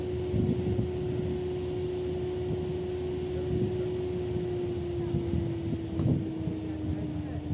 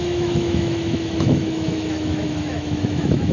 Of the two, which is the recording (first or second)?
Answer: first